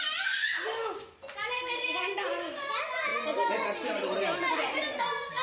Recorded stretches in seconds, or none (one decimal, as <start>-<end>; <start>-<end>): 0.0-5.4